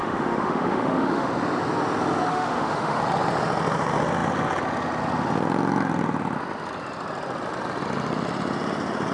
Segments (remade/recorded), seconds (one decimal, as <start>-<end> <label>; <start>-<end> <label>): 0.0-1.3 remade; 1.3-2.3 recorded; 2.3-3.0 remade; 3.0-9.1 recorded